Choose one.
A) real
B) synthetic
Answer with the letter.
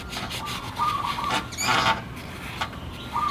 A